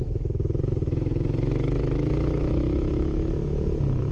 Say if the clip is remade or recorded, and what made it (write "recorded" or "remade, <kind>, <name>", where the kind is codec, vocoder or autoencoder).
remade, autoencoder, DAC-VAE